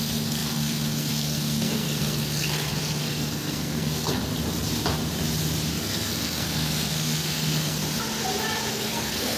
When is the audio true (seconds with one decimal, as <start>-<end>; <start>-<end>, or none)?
4.2-5.7; 7.8-8.7